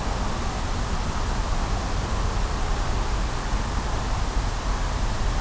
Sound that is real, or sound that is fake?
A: real